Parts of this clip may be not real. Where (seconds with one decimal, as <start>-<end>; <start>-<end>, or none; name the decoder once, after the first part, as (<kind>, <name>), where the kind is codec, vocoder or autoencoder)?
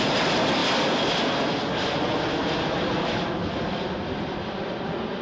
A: none